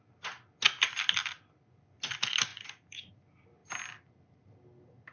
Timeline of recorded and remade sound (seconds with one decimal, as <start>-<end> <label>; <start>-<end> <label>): 0.0-5.1 recorded